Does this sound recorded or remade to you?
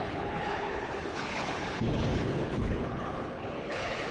remade